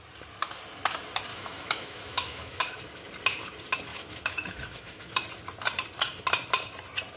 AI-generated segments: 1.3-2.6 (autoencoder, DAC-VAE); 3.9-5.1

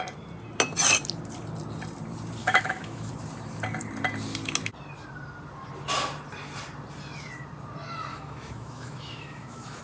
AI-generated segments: 2.4-3.1 (autoencoder, DAC-VAE); 8.1-9.8

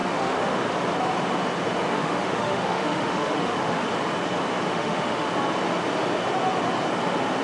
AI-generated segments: 0.0-0.6 (autoencoder, DAC-VAE); 2.0-3.9; 4.7-5.3

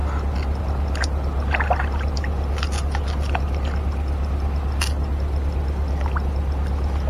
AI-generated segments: none